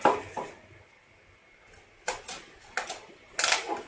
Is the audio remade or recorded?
recorded